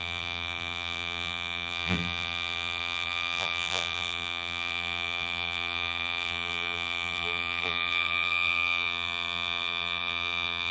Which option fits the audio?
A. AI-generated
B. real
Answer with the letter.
A